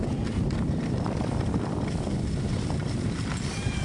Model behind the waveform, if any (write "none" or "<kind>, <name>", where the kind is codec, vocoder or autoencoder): none